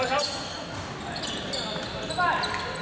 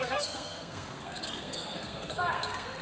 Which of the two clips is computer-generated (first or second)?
second